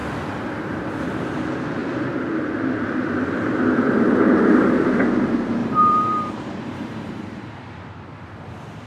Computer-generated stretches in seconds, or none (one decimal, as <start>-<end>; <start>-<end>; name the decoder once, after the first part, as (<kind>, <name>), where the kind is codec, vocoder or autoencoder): 5.6-7.5 (vocoder, BigVGAN v2)